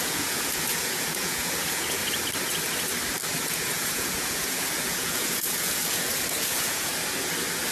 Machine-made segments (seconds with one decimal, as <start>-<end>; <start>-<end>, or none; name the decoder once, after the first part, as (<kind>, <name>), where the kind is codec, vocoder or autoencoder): 0.0-2.0 (vocoder, Vocos); 3.4-6.9